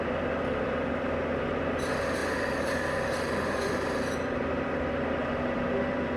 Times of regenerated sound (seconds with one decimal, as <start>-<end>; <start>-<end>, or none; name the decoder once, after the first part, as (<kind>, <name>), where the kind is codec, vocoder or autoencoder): 0.0-6.2 (vocoder, BigVGAN v2)